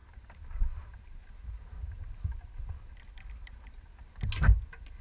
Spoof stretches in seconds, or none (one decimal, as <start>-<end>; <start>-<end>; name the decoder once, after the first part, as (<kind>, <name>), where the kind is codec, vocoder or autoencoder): none